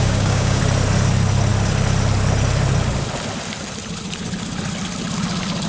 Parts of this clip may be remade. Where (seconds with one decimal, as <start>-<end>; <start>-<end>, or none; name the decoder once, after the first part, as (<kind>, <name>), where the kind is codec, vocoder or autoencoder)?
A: 0.0-0.6 (codec, DAC)